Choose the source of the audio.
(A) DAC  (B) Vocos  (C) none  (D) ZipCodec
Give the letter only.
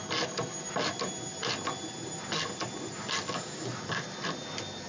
C